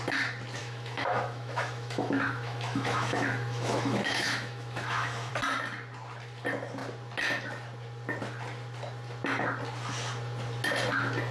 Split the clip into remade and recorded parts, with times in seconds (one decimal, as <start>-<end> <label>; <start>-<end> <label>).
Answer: 0.0-0.6 recorded; 0.6-5.3 remade; 5.3-11.3 recorded